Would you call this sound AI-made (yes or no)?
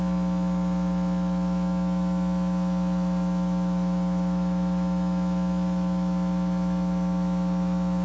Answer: yes